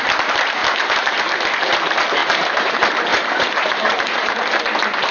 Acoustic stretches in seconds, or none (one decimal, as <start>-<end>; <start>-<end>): 0.0-0.6; 1.2-2.2; 2.7-3.1; 4.3-5.1